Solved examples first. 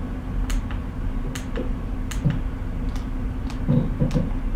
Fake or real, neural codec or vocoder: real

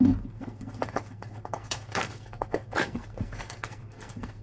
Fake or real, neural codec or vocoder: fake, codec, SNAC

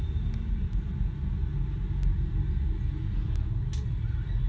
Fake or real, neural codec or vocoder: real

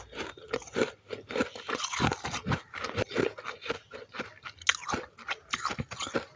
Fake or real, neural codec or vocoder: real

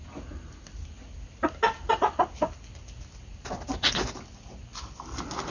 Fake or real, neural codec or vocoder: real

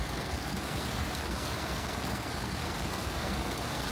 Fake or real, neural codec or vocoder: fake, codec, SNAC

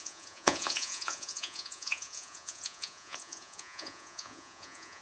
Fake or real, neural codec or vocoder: fake, vocoder, Vocos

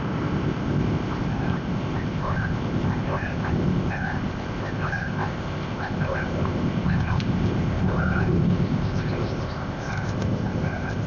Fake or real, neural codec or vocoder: fake, codec, ZipCodec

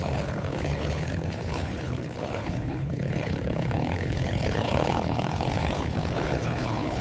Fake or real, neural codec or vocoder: fake, codec, HILCodec